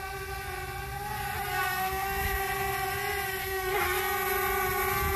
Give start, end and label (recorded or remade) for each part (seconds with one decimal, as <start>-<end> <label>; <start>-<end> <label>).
0.0-1.5 recorded; 1.5-2.4 remade; 2.4-3.4 recorded; 3.4-4.0 remade; 4.0-5.2 recorded